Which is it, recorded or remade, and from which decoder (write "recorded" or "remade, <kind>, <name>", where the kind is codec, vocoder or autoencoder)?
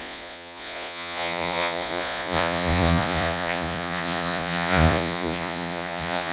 remade, vocoder, Vocos